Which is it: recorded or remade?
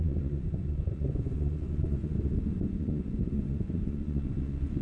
remade